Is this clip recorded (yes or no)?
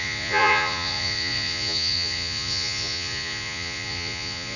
no